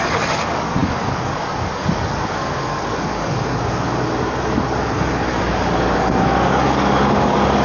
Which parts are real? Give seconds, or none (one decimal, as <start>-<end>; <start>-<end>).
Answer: none